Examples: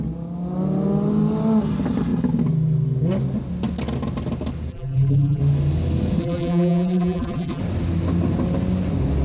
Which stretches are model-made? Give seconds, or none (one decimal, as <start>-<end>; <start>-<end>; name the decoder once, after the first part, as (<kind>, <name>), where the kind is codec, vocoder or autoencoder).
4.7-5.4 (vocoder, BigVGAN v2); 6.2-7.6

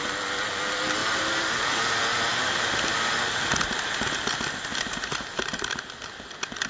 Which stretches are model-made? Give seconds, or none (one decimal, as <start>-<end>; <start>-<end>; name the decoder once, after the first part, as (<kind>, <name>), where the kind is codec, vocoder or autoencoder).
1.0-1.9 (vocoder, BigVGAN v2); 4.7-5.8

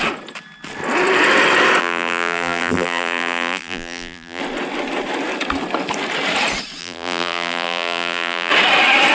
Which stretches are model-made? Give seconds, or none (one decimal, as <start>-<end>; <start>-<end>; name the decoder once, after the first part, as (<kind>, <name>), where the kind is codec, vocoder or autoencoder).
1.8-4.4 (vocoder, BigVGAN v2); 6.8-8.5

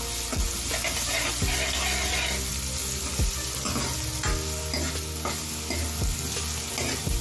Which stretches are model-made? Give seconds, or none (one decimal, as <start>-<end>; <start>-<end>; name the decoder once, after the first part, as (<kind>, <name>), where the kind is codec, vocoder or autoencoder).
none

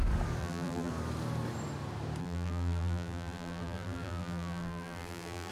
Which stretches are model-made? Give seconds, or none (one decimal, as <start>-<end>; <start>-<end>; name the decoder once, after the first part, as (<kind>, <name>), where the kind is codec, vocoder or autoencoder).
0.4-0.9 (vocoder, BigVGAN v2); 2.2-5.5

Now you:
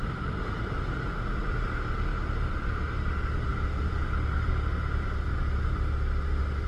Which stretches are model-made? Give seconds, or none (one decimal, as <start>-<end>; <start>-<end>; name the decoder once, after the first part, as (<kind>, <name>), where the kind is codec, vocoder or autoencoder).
2.1-2.8 (vocoder, BigVGAN v2); 3.5-4.5; 5.3-5.8

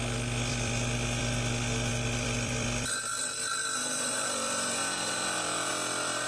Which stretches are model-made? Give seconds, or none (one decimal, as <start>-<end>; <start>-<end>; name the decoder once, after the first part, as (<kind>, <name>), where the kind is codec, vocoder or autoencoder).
0.5-1.2 (vocoder, BigVGAN v2); 1.9-5.7

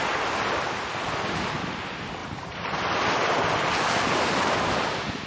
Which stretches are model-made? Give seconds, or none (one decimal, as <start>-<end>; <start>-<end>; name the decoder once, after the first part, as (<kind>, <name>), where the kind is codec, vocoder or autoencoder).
none